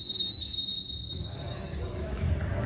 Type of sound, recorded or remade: remade